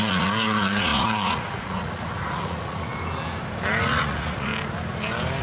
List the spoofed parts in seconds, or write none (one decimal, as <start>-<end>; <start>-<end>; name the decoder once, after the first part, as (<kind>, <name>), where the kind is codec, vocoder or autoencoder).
0.0-2.9 (vocoder, Vocos); 3.8-4.5